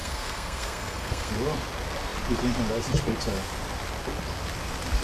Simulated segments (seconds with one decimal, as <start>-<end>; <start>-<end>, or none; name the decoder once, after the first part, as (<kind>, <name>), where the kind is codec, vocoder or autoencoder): 0.0-1.3 (codec, SNAC)